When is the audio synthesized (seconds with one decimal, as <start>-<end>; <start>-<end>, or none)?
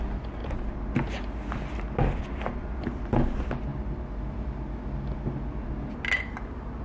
none